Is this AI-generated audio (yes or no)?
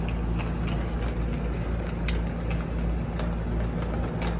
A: no